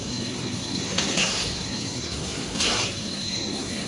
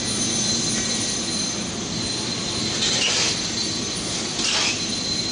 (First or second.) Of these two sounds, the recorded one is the second